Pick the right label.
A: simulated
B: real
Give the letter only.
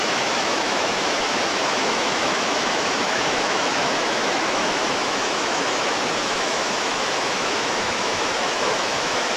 A